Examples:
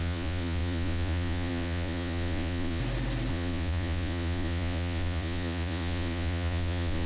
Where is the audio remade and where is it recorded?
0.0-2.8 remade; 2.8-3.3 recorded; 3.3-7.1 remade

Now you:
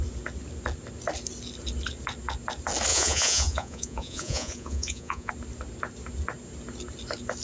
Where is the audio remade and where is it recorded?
0.0-2.9 recorded; 2.9-5.3 remade; 5.3-7.4 recorded